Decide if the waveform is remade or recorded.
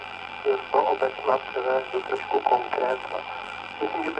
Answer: remade